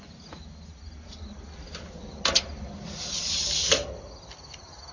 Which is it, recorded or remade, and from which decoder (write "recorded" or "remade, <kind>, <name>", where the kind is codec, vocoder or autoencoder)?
recorded